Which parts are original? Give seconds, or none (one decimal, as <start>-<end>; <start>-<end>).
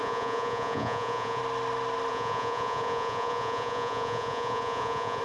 1.4-2.1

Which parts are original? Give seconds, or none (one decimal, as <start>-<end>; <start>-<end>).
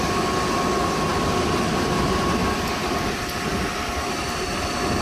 0.0-5.0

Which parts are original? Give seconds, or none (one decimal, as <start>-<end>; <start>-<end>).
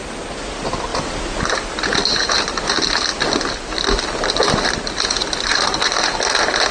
0.0-6.7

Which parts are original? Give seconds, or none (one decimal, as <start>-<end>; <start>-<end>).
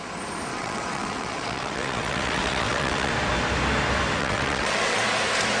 0.0-0.5; 3.1-4.2; 5.0-5.6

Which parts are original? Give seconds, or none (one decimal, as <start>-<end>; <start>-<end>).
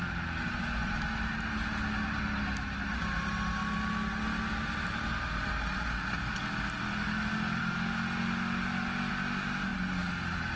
0.0-10.6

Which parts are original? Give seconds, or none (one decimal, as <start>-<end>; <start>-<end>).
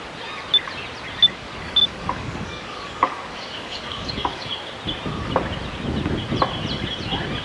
0.0-1.2; 4.6-7.4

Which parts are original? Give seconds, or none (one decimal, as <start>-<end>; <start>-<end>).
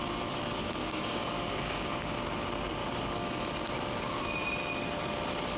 0.0-0.8; 2.0-2.8; 3.4-5.6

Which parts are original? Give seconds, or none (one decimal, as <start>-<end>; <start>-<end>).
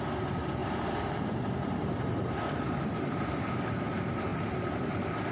0.0-0.6; 3.5-4.3